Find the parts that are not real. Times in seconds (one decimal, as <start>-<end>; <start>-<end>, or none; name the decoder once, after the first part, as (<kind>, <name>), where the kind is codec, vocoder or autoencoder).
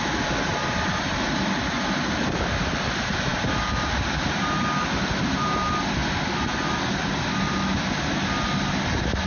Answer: none